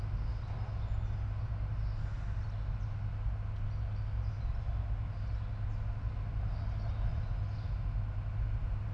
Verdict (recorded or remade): recorded